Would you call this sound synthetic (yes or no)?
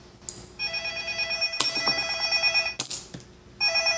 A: no